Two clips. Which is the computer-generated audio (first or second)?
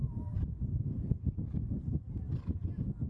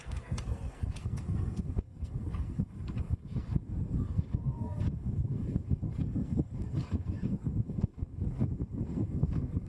second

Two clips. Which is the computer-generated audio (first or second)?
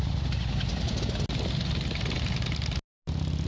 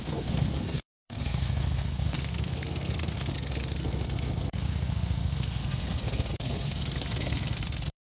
second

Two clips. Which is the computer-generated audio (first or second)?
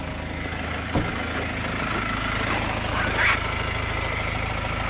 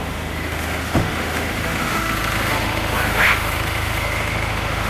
second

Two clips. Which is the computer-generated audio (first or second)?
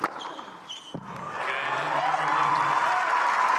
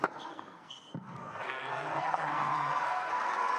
second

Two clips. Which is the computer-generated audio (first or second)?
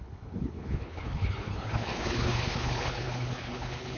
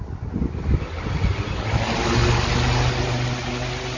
first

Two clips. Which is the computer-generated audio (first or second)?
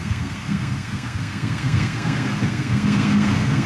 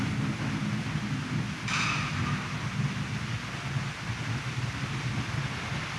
first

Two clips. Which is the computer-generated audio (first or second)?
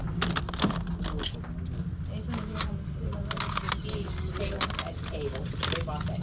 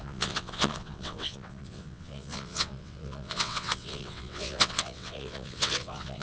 second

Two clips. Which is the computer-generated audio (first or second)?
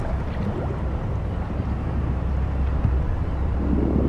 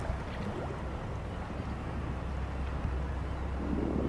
first